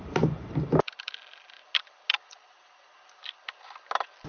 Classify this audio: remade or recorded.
recorded